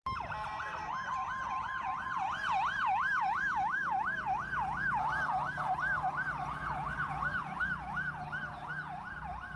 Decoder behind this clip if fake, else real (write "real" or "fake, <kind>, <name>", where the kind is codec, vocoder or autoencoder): real